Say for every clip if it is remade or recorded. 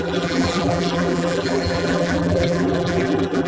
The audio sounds remade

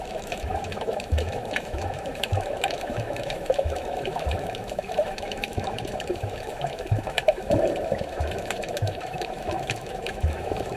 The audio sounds remade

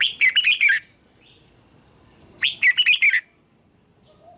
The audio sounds recorded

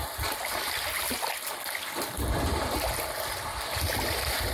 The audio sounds recorded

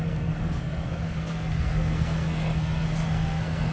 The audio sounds remade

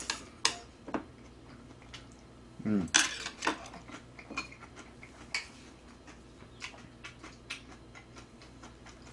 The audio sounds recorded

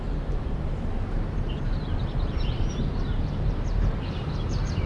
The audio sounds remade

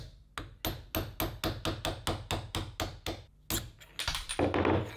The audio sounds recorded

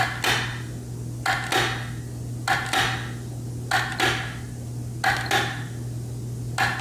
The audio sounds recorded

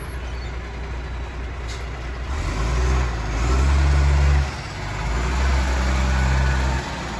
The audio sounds recorded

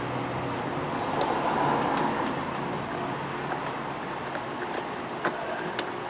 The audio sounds recorded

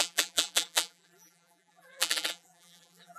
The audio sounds remade